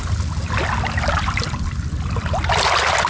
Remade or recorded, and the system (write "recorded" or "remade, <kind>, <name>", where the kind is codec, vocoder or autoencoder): recorded